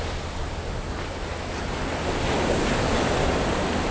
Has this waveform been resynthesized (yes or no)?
no